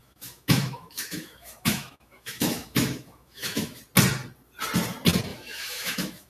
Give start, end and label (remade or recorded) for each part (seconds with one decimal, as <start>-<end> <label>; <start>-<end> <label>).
0.0-3.8 remade; 3.8-5.3 recorded; 5.3-6.3 remade